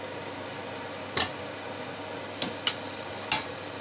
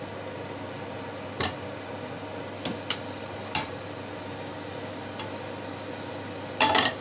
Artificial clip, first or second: second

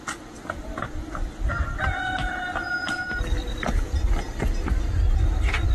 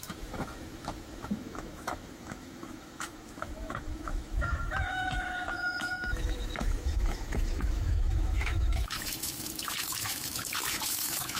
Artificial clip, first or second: second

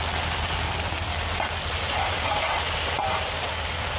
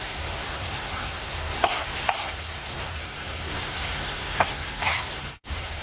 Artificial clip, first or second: second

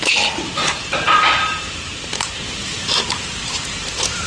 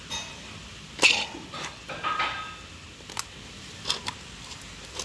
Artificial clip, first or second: first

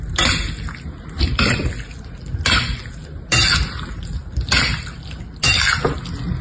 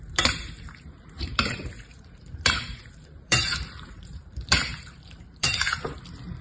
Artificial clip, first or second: second